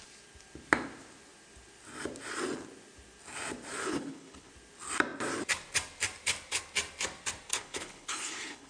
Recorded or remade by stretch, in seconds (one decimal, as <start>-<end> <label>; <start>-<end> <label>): 0.0-3.8 recorded; 3.8-4.5 remade; 4.5-7.5 recorded; 7.5-8.7 remade